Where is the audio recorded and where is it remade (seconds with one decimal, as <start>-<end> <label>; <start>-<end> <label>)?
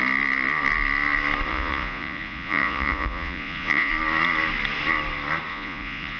0.0-1.5 recorded; 1.5-3.9 remade; 3.9-5.5 recorded; 5.5-6.2 remade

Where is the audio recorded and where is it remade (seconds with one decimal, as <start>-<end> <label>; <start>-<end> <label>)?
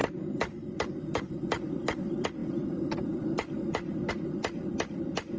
0.0-5.4 remade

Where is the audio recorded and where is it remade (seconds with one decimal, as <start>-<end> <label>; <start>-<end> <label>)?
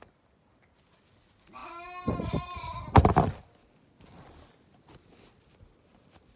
0.0-6.4 recorded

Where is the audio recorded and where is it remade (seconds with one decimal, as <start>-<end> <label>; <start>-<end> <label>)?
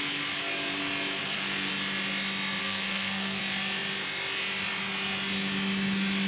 0.0-1.2 recorded; 1.2-1.7 remade; 1.7-2.6 recorded; 2.6-3.4 remade; 3.4-6.3 recorded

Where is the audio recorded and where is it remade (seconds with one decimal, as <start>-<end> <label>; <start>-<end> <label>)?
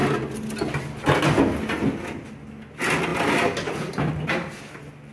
0.0-5.1 recorded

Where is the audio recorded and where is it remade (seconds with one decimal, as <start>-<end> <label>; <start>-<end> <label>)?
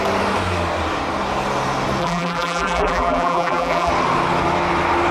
0.0-2.0 recorded; 2.0-3.9 remade; 3.9-5.1 recorded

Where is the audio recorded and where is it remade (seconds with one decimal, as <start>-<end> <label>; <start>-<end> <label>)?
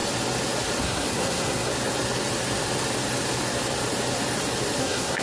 0.0-0.8 recorded; 0.8-1.7 remade; 1.7-4.8 recorded; 4.8-5.2 remade